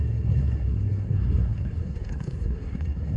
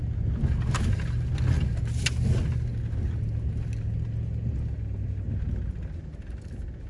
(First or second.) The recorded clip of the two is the second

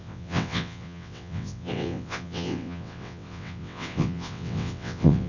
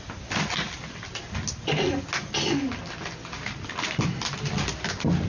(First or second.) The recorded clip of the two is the second